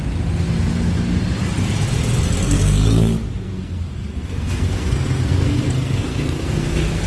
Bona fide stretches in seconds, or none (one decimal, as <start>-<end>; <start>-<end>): 0.0-2.4